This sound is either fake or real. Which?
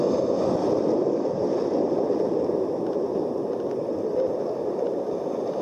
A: real